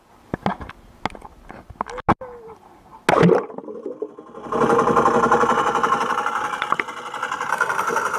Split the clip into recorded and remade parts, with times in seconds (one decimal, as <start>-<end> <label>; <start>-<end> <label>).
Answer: 0.0-7.5 recorded; 7.5-8.2 remade